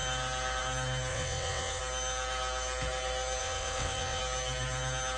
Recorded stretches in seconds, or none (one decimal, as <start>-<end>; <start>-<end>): 0.0-1.1; 1.8-3.4; 4.2-5.2